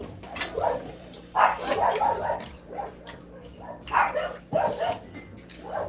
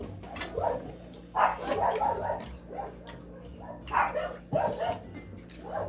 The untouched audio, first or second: second